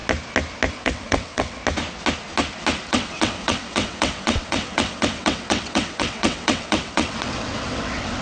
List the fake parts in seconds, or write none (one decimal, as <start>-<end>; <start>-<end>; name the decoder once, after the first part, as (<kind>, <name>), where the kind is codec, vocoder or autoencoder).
0.7-1.6 (vocoder, WaveNeXt); 2.9-8.2